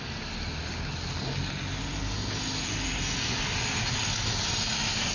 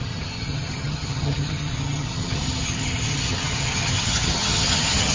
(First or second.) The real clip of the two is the first